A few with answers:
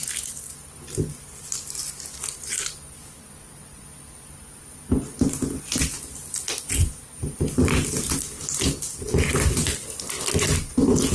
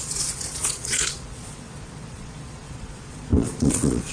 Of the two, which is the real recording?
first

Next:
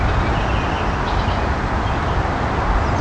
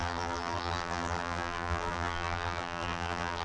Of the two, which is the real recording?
first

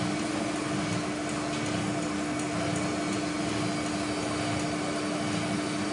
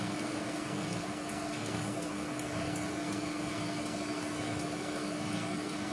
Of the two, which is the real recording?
first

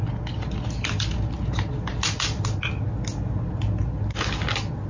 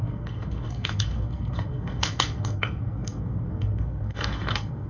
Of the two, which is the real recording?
first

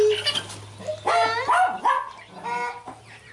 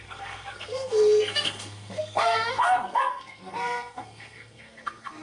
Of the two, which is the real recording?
first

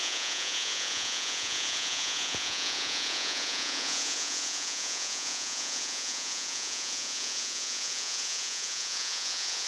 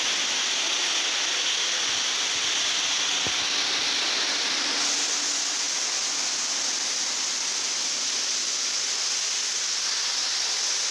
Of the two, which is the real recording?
second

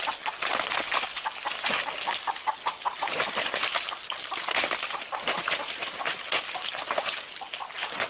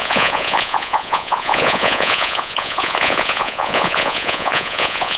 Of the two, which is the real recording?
first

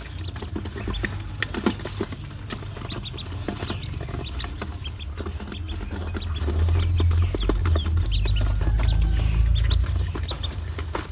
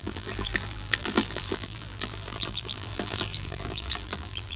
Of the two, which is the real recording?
first